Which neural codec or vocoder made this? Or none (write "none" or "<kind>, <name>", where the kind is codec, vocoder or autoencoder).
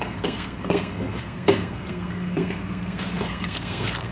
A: codec, SNAC